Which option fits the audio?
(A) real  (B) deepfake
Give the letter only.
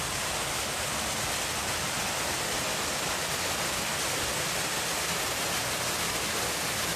A